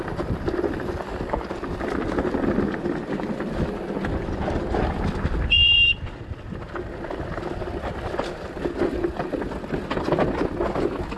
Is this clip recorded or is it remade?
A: recorded